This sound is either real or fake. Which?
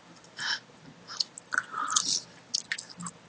real